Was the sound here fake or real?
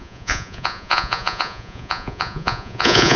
fake